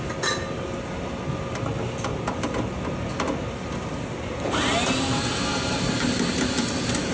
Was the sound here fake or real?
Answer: real